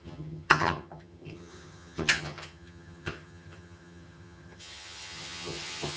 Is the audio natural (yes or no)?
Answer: no